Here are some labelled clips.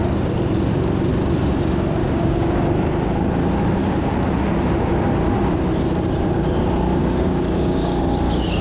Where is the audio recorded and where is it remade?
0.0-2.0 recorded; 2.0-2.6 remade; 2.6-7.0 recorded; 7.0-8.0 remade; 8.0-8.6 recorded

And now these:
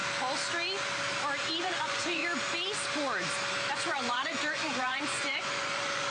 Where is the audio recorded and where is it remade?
0.0-1.6 recorded; 1.6-2.2 remade; 2.2-3.7 recorded; 3.7-6.1 remade

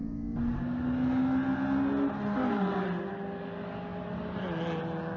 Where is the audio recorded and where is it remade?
0.0-5.2 recorded

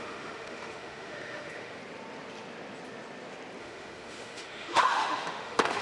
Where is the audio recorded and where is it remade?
0.0-1.8 remade; 1.8-3.6 recorded; 3.6-5.8 remade

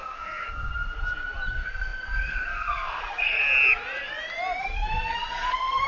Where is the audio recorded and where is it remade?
0.0-0.7 remade; 0.7-1.5 recorded; 1.5-3.4 remade; 3.4-4.6 recorded; 4.6-5.9 remade

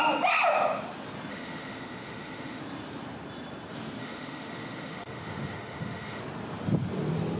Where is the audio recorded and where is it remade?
0.0-1.3 recorded; 1.3-2.6 remade; 2.6-4.0 recorded; 4.0-6.2 remade; 6.2-7.4 recorded

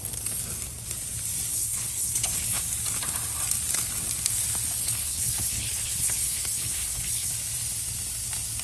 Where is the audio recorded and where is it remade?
0.0-1.5 recorded; 1.5-2.6 remade; 2.6-4.8 recorded; 4.8-7.3 remade; 7.3-8.6 recorded

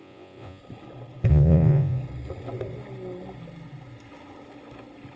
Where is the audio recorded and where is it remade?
0.0-0.6 remade; 0.6-1.3 recorded; 1.3-2.0 remade; 2.0-5.2 recorded